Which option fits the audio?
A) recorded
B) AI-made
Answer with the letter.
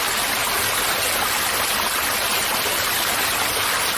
A